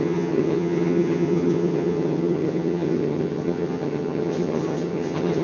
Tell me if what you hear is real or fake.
fake